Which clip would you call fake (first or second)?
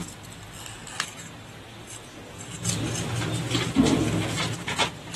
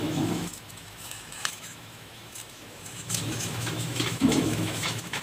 second